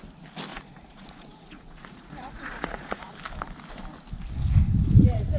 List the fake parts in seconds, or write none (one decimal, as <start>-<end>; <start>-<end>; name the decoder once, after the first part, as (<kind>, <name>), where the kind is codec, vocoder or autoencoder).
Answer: 0.5-3.1 (vocoder, Vocos)